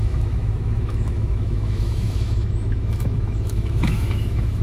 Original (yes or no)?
no